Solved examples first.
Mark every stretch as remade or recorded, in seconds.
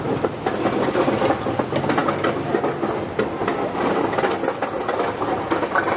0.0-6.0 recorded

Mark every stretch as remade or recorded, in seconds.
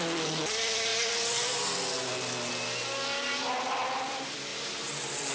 0.0-5.3 recorded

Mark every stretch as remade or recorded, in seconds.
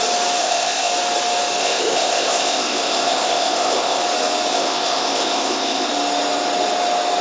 0.0-0.4 recorded; 0.4-0.9 remade; 0.9-1.6 recorded; 1.6-4.0 remade; 4.0-4.5 recorded; 4.5-5.9 remade; 5.9-7.2 recorded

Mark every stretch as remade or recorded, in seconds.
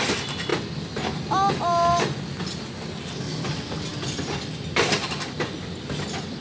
0.0-6.4 recorded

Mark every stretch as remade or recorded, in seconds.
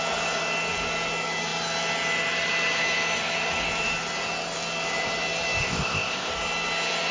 0.0-5.6 recorded; 5.6-6.3 remade; 6.3-7.1 recorded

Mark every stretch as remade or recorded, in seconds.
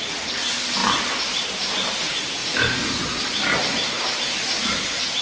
0.0-5.2 recorded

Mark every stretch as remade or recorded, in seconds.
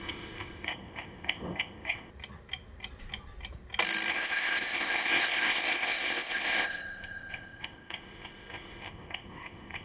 0.0-2.1 remade; 2.1-4.1 recorded; 4.1-9.8 remade